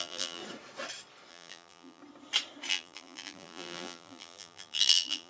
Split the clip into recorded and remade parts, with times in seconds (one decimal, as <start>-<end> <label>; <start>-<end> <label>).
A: 0.0-0.4 remade; 0.4-1.3 recorded; 1.3-2.0 remade; 2.0-2.7 recorded; 2.7-5.3 remade